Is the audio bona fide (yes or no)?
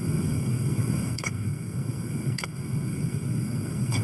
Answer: no